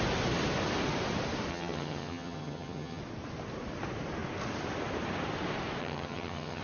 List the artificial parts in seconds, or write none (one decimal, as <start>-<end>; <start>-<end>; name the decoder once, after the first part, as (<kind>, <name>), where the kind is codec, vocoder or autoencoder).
1.5-3.0 (vocoder, HiFi-GAN); 5.8-6.6